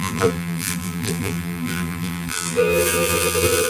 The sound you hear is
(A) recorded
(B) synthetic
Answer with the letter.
B